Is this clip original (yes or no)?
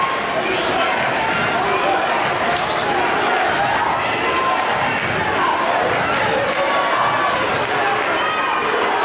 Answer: yes